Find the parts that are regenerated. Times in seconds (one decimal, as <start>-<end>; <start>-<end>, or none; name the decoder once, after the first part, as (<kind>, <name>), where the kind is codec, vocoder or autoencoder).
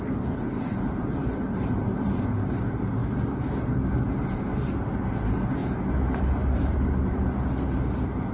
0.7-2.6 (vocoder, BigVGAN v2); 5.6-7.3